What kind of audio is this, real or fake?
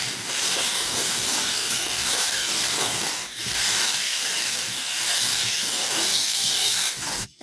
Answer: fake